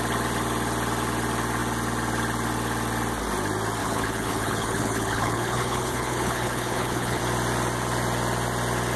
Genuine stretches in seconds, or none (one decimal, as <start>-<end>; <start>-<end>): 0.0-3.8; 7.2-9.0